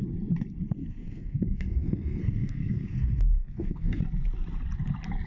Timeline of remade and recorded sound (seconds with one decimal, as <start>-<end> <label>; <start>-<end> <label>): 0.0-0.8 recorded; 0.8-4.0 remade; 4.0-5.3 recorded